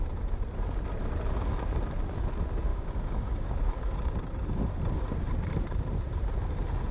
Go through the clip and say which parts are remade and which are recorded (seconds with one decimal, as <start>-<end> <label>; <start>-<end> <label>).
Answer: 0.0-2.7 recorded; 2.7-3.7 remade; 3.7-6.9 recorded